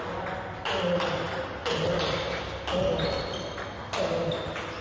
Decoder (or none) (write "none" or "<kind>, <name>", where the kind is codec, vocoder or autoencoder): none